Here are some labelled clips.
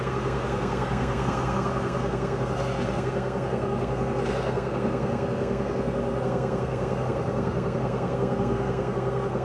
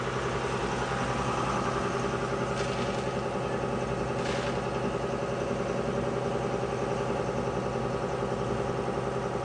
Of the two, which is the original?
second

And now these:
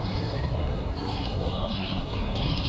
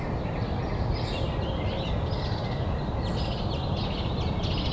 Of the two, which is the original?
second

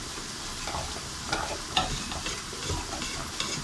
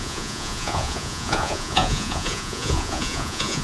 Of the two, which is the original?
first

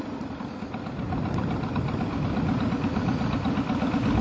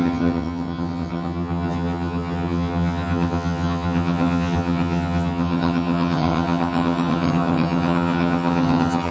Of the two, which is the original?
first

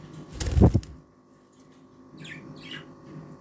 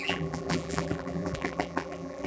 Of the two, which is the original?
first